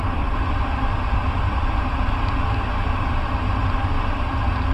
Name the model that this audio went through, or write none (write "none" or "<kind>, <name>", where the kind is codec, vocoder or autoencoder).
vocoder, BigVGAN v2